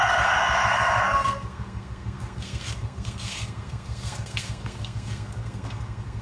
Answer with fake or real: fake